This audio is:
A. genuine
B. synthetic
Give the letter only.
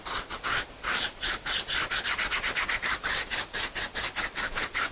A